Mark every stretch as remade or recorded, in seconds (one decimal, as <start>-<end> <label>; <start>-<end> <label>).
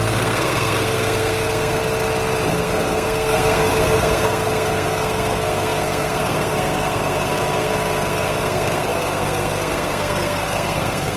0.0-1.8 remade; 1.8-2.5 recorded; 2.5-11.2 remade